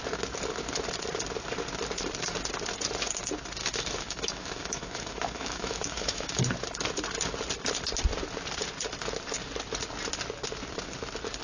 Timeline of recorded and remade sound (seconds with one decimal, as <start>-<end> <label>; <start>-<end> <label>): 0.0-3.6 recorded; 3.6-6.4 remade; 6.4-11.4 recorded